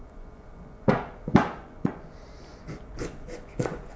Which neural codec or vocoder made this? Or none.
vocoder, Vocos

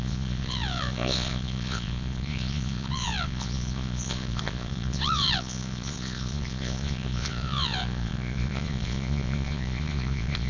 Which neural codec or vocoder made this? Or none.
vocoder, Vocos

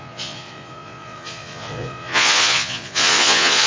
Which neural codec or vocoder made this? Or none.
vocoder, Vocos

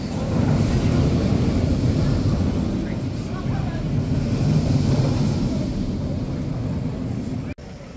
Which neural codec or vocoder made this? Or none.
none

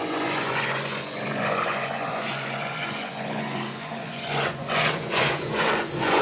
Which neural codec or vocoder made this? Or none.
vocoder, Vocos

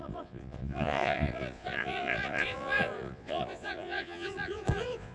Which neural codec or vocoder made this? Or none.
vocoder, Vocos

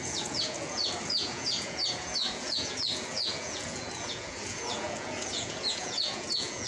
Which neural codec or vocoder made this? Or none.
vocoder, Vocos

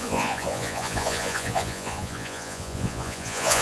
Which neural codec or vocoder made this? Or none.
vocoder, Vocos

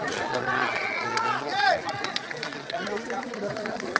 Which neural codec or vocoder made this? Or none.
vocoder, Vocos